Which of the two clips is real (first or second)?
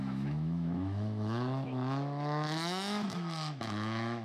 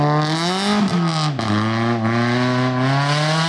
second